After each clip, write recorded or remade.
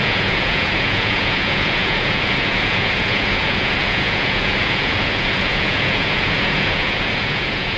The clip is remade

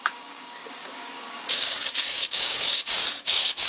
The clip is remade